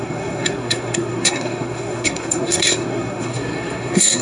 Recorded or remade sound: remade